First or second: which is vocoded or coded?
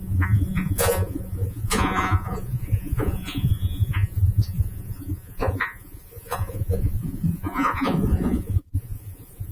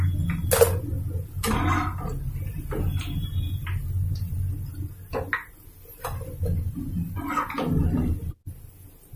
first